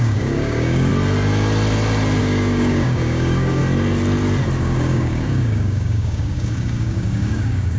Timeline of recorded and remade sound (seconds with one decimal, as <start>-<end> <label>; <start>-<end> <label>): 0.0-0.9 remade; 0.9-2.2 recorded; 2.2-3.6 remade; 3.6-4.6 recorded; 4.6-7.8 remade